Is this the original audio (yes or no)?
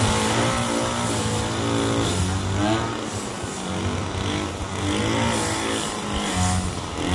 yes